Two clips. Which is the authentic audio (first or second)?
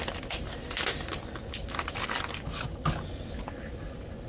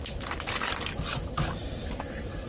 first